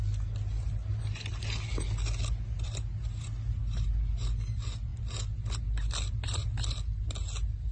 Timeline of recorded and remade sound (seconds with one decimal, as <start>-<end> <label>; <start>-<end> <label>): 0.0-7.7 recorded